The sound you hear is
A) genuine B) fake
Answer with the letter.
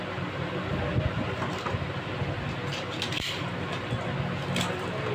A